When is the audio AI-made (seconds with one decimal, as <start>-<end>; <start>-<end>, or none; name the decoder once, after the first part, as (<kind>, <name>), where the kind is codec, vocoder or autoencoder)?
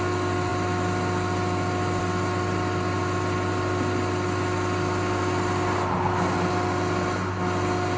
none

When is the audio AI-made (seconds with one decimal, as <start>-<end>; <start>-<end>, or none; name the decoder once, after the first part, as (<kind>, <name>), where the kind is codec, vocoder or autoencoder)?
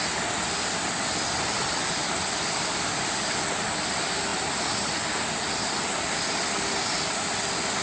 2.0-3.1 (vocoder, BigVGAN v2)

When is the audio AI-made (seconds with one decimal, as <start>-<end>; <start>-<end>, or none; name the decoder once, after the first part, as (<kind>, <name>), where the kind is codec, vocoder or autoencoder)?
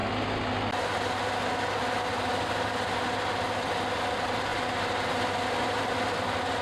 none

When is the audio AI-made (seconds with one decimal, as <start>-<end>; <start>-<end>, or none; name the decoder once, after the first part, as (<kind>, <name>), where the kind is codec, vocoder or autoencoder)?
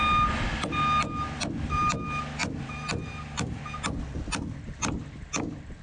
2.4-3.6 (vocoder, BigVGAN v2)